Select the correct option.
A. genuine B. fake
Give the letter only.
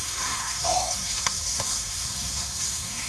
B